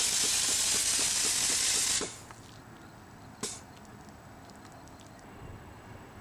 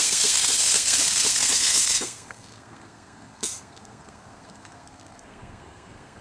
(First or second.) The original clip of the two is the first